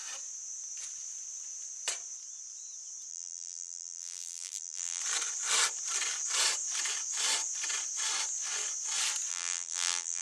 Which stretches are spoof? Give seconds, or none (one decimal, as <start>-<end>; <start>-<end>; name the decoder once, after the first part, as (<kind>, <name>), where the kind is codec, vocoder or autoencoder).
3.1-5.0 (vocoder, BigVGAN v2); 9.3-10.2